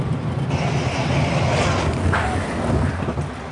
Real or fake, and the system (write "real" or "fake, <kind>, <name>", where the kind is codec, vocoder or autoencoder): real